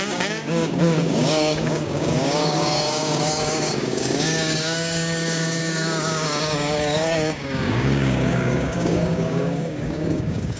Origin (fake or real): fake